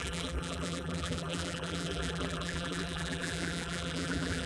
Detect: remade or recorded remade